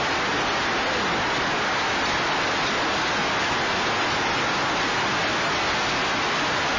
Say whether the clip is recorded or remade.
recorded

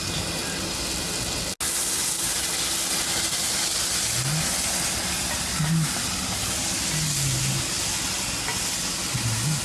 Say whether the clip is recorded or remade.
recorded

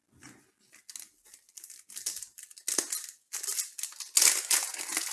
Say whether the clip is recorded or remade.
recorded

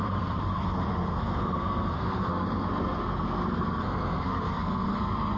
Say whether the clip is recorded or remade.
remade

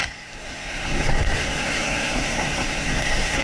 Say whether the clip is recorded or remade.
remade